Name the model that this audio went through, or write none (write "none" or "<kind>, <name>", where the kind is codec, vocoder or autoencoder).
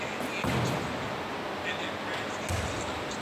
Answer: none